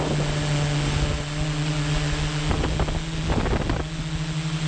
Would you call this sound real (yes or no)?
yes